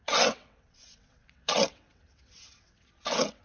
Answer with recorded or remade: remade